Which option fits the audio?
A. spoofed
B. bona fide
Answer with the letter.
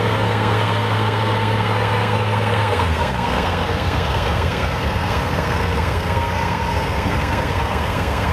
A